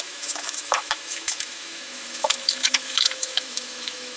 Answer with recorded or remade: remade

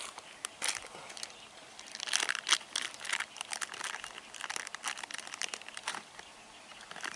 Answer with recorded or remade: recorded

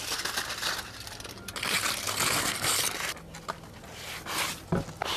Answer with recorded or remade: recorded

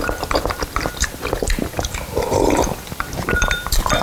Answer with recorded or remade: remade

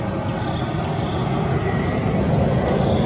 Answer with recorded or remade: recorded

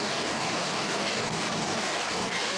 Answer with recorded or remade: remade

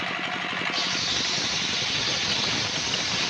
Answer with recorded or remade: recorded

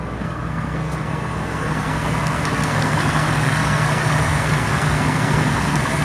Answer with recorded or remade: remade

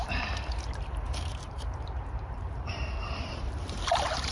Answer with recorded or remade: remade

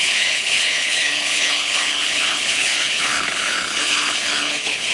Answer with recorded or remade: remade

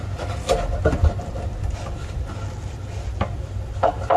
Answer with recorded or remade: recorded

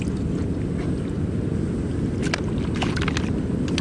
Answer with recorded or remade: recorded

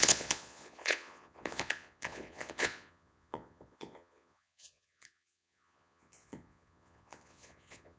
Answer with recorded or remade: remade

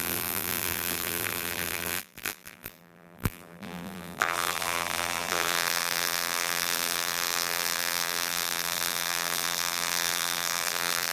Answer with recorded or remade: remade